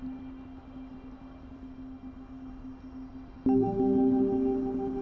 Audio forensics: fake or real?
real